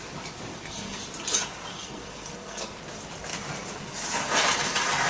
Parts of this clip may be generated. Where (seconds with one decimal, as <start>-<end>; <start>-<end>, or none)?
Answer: 0.5-1.0; 1.7-2.8